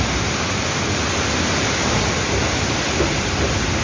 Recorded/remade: recorded